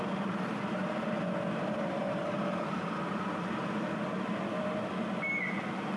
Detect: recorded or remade remade